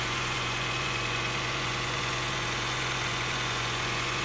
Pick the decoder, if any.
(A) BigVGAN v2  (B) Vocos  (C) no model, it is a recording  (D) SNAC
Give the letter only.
B